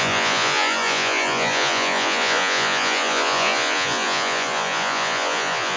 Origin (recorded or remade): remade